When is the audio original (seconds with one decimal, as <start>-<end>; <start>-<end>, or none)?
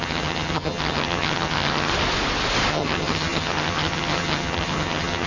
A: 1.9-2.7